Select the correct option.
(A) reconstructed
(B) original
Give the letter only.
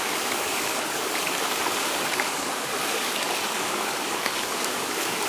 A